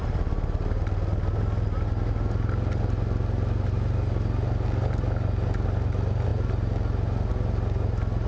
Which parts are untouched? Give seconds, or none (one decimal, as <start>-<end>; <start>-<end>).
0.0-8.3